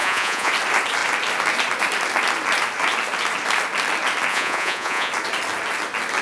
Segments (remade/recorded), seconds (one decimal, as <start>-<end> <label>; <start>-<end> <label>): 0.0-0.5 remade; 0.5-4.3 recorded; 4.3-5.1 remade; 5.1-6.2 recorded